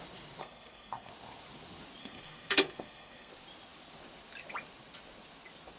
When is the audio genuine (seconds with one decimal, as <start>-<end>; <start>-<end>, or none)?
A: 0.0-0.4; 1.1-2.0; 3.3-5.8